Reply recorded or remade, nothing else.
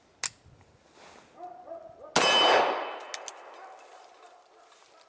recorded